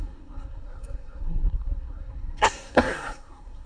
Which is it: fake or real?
fake